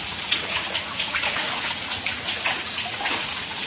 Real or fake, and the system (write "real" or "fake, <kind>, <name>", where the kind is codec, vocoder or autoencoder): fake, vocoder, Vocos